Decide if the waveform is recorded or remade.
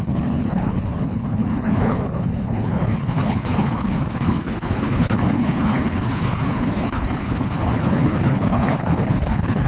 remade